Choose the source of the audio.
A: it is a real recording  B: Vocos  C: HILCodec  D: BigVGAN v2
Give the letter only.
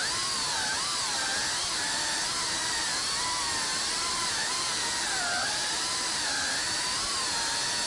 D